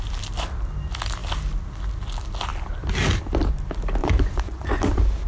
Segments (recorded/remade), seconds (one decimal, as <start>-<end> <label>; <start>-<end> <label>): 0.0-4.0 recorded; 4.0-4.8 remade; 4.8-5.3 recorded